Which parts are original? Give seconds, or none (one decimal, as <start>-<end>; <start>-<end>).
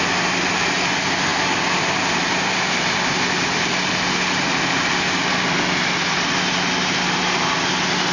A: 0.0-8.1